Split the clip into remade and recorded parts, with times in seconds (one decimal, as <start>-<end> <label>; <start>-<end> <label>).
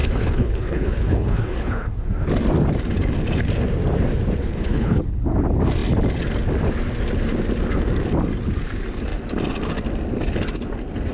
0.0-2.1 remade; 2.1-4.4 recorded; 4.4-5.2 remade; 5.2-11.1 recorded